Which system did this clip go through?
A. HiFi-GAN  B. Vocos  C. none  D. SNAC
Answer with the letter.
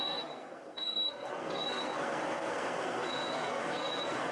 D